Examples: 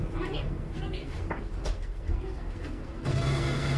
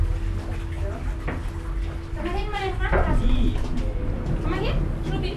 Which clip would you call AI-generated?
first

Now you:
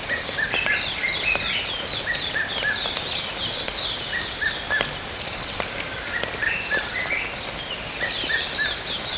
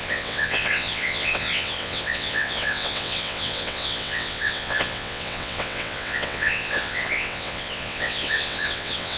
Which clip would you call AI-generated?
second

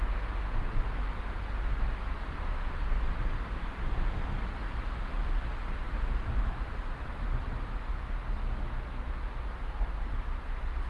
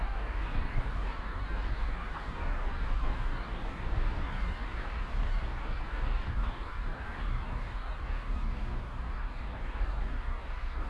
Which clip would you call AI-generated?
second